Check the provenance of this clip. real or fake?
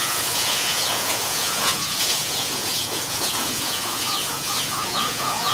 fake